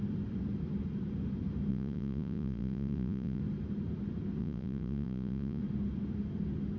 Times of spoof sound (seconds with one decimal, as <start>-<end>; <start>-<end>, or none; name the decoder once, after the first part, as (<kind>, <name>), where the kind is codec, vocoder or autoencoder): 1.7-3.4 (vocoder, Vocos); 4.4-5.6